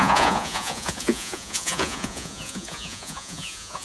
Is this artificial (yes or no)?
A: yes